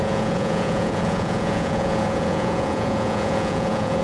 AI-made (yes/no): yes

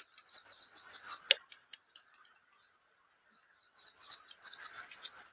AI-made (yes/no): no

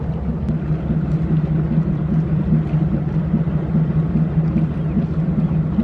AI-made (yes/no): no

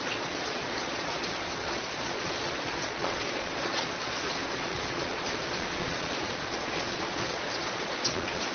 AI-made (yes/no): yes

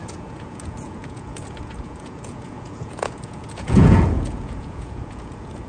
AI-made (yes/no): yes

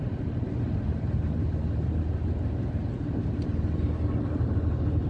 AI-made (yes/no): no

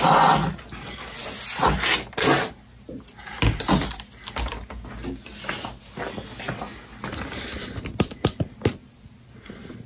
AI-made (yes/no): no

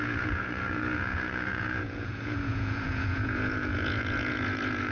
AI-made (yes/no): yes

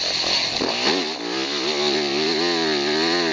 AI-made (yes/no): no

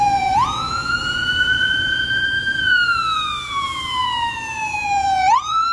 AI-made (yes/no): yes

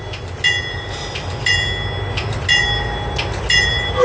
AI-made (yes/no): no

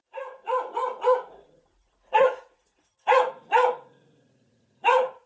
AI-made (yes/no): yes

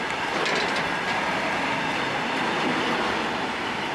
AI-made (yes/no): no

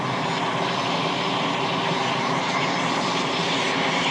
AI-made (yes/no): no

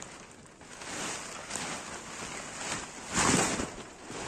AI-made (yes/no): no